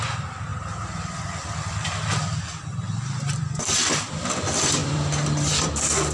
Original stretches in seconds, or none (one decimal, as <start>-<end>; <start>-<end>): 0.0-0.5; 4.1-4.8; 5.5-6.1